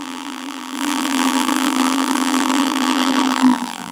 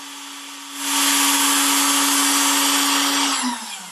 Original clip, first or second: second